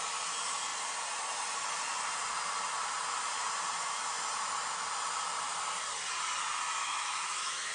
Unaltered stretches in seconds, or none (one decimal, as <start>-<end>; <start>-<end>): 0.0-6.8